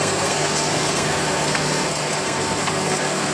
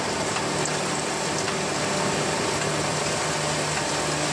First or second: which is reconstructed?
first